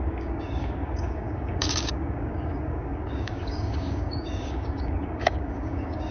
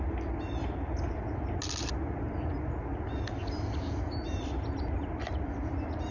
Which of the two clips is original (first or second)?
second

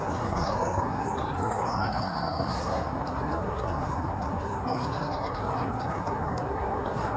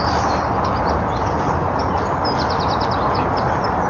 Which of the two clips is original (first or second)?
second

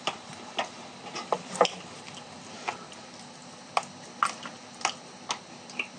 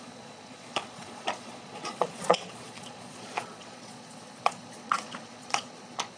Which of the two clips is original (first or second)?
first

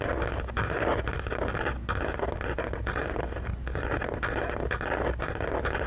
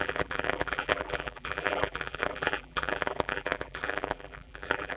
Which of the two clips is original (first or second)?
first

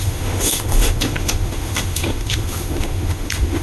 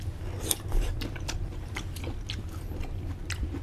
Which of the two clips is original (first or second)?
second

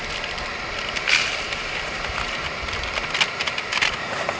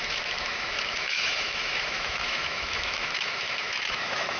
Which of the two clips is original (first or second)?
first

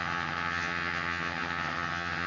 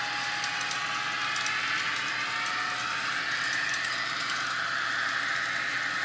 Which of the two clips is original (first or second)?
second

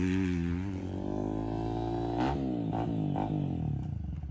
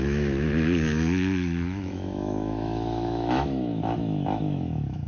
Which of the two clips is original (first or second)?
first